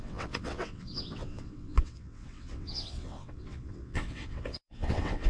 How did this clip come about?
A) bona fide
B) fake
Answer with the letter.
B